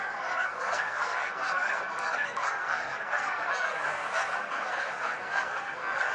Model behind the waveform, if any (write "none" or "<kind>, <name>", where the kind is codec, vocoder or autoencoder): codec, SNAC